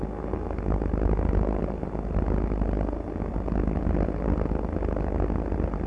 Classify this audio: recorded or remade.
recorded